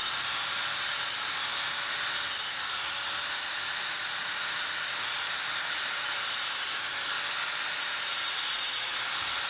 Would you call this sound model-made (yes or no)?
no